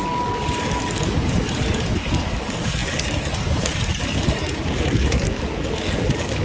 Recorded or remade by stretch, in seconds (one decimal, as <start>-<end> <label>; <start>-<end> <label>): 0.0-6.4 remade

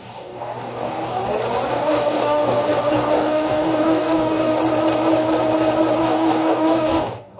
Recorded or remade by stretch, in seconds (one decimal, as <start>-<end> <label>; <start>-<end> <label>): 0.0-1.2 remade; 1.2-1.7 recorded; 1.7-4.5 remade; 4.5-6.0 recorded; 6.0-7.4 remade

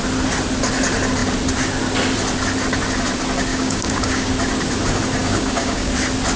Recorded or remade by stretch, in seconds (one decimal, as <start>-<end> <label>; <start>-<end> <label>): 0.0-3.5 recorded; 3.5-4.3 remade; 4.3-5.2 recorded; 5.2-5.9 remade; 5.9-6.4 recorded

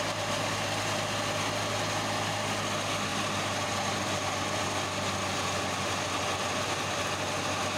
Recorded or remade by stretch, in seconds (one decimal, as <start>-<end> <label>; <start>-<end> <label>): 0.0-7.8 recorded

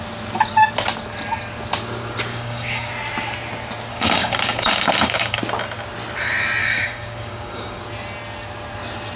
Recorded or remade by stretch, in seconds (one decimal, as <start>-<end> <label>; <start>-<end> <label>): 0.0-2.3 recorded; 2.3-2.9 remade; 2.9-3.9 recorded; 3.9-5.4 remade; 5.4-6.6 recorded; 6.6-7.8 remade; 7.8-9.2 recorded